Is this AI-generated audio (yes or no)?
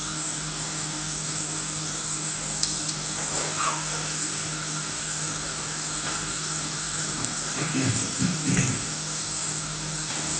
yes